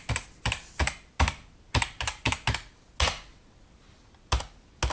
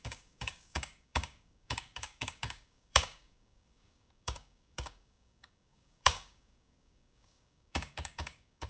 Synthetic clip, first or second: second